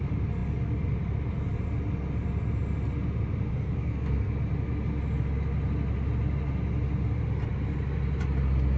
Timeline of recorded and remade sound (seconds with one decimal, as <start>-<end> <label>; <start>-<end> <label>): 0.0-3.5 recorded; 3.5-4.3 remade; 4.3-8.8 recorded